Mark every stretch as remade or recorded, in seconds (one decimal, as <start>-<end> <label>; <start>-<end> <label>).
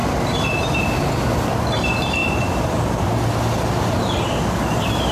0.0-0.8 remade; 0.8-2.2 recorded; 2.2-3.0 remade; 3.0-5.1 recorded